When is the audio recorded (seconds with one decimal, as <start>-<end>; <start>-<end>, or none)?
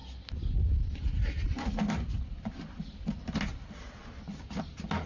0.0-5.1